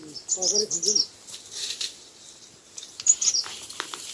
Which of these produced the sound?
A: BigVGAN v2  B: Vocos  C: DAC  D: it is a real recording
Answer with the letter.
A